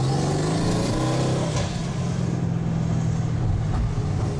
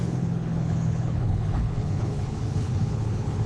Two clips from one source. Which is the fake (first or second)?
second